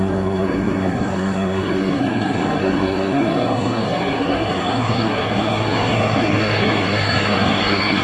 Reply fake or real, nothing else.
fake